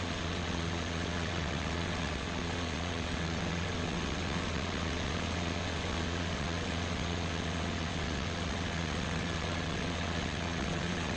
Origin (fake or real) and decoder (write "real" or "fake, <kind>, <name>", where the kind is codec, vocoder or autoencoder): fake, vocoder, WaveNeXt